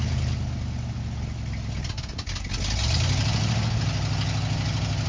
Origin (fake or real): real